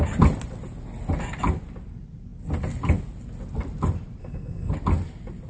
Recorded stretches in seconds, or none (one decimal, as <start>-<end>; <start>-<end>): 0.0-4.2; 4.7-5.5